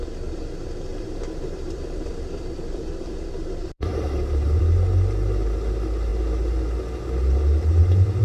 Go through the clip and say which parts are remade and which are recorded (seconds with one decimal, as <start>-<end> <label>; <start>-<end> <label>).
0.0-0.9 recorded; 0.9-4.6 remade; 4.6-8.2 recorded